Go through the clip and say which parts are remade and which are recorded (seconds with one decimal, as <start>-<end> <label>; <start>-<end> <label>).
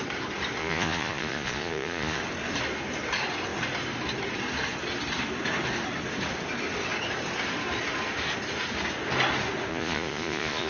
0.0-0.6 recorded; 0.6-2.2 remade; 2.2-9.7 recorded; 9.7-10.7 remade